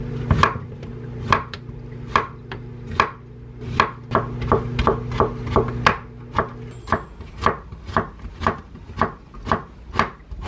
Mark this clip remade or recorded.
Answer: recorded